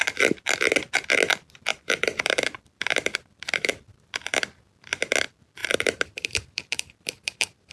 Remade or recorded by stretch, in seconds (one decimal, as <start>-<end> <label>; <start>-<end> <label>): 0.0-1.7 recorded; 1.7-4.6 remade; 4.6-5.6 recorded; 5.6-7.7 remade